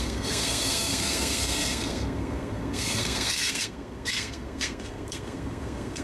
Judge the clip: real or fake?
fake